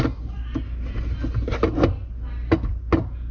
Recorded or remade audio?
recorded